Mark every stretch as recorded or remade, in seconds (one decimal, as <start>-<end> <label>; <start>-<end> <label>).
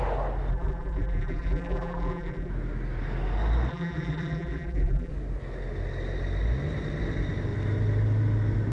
0.0-0.5 recorded; 0.5-2.5 remade; 2.5-3.7 recorded; 3.7-5.1 remade; 5.1-8.7 recorded